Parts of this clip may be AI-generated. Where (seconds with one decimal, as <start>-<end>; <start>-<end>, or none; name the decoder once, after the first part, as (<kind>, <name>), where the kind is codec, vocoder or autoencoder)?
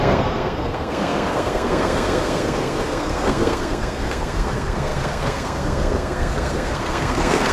0.0-7.5 (codec, SNAC)